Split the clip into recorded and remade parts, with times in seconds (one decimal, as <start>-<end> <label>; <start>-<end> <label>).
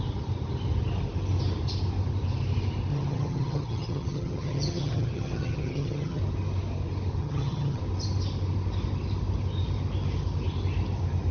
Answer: 0.0-2.9 recorded; 2.9-6.2 remade; 6.2-7.2 recorded; 7.2-7.8 remade; 7.8-11.3 recorded